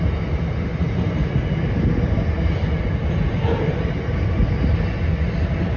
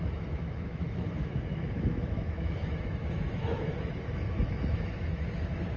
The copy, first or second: second